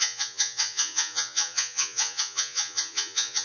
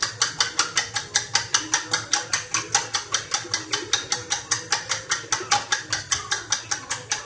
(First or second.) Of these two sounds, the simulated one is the first